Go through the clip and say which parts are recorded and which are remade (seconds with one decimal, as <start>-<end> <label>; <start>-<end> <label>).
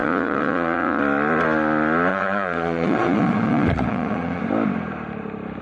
0.0-1.0 remade; 1.0-2.1 recorded; 2.1-4.4 remade; 4.4-5.6 recorded